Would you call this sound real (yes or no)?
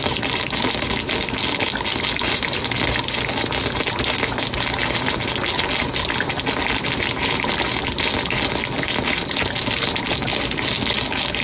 yes